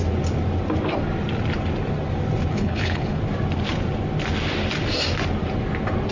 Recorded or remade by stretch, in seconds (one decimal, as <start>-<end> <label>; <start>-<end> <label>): 0.0-2.5 recorded; 2.5-3.2 remade; 3.2-6.1 recorded